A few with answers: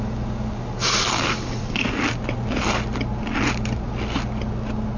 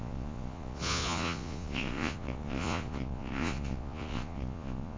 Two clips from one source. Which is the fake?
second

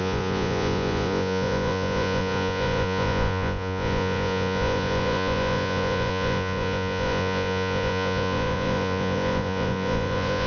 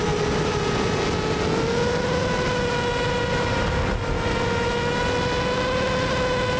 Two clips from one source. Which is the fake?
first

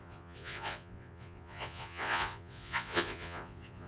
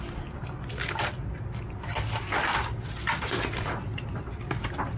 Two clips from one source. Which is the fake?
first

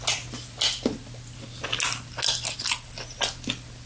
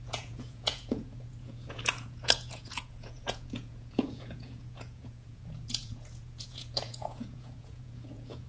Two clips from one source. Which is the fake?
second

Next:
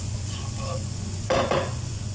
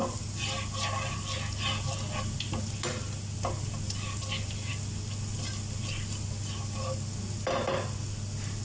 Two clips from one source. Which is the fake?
first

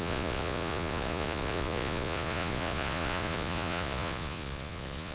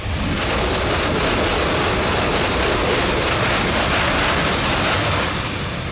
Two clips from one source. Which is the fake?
first